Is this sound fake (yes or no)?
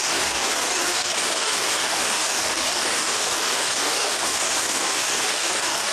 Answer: yes